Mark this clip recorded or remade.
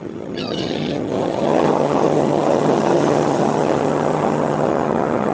remade